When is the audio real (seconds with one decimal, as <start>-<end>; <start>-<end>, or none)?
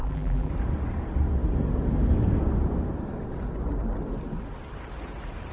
0.5-5.5